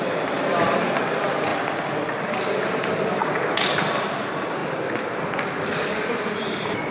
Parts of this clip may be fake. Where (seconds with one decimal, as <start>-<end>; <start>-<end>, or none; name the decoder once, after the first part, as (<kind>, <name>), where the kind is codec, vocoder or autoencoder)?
0.0-1.5 (vocoder, BigVGAN v2); 2.2-4.6; 5.7-6.9